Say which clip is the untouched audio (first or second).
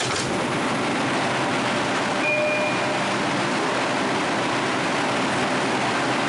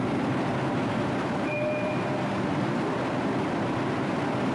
first